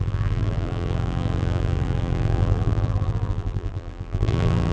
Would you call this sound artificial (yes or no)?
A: yes